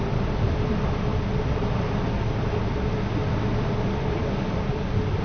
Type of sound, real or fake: real